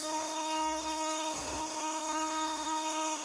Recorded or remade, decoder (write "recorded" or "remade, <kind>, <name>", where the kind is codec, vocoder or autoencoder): remade, codec, SNAC